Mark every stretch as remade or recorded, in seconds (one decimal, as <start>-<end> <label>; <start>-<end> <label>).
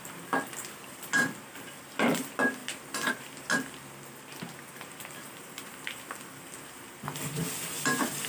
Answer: 0.0-8.3 recorded